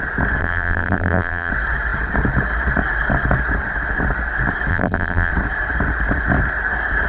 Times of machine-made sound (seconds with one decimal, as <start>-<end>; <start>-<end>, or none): 0.4-1.5; 4.7-5.3